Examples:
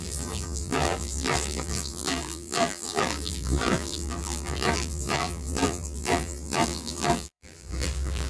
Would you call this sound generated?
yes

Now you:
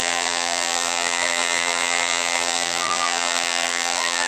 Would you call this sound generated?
yes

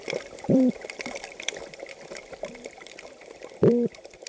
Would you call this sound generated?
yes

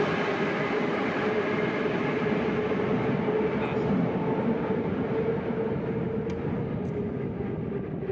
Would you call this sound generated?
no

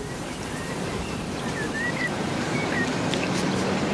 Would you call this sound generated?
yes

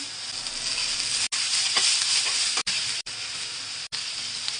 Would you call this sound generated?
no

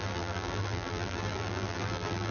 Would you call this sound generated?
yes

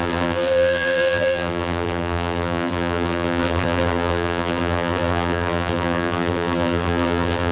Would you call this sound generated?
yes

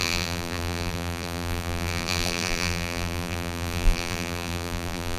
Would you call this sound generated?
yes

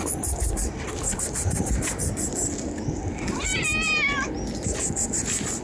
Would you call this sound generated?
yes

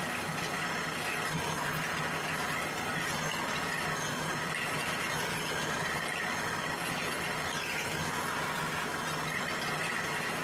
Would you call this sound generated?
no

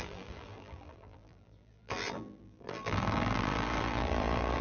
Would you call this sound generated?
yes